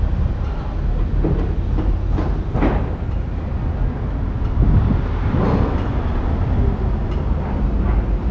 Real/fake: real